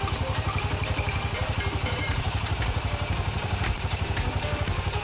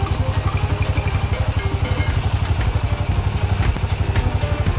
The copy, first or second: first